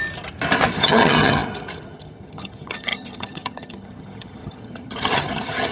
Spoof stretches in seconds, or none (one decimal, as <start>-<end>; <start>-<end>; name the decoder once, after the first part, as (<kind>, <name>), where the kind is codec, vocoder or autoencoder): 0.7-5.7 (vocoder, HiFi-GAN)